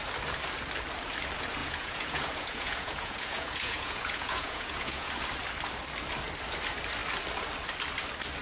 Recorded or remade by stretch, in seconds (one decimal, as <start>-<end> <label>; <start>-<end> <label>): 0.0-1.6 recorded; 1.6-5.1 remade; 5.1-8.4 recorded